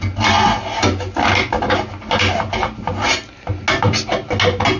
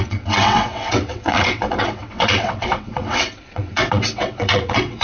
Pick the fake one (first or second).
second